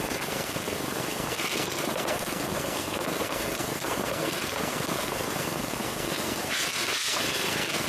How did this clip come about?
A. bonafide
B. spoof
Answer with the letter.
B